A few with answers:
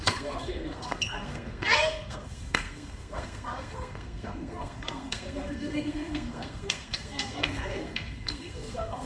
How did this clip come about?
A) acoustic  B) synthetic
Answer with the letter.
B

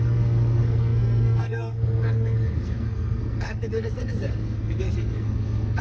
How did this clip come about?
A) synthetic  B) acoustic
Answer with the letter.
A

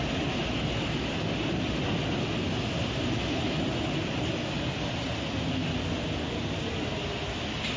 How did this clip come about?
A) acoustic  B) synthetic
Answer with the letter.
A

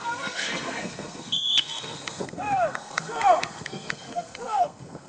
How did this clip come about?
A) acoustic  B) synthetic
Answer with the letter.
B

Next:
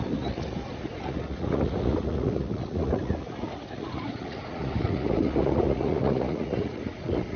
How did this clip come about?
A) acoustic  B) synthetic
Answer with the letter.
B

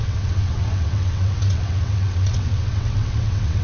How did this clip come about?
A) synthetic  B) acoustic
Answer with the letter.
A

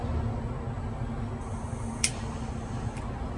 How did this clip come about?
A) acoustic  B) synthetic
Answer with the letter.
A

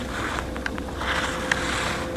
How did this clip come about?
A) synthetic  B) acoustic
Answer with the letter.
B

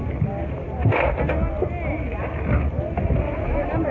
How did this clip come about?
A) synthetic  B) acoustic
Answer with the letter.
B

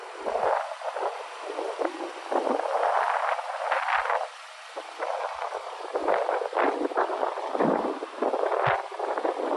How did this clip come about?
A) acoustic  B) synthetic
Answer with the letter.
A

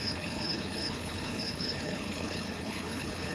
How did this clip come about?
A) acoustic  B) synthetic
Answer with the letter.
B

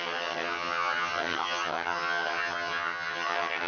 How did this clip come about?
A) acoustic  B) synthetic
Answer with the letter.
B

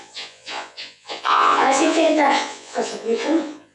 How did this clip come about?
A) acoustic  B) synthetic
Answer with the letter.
B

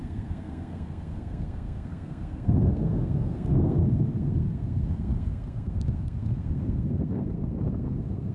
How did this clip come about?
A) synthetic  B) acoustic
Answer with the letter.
A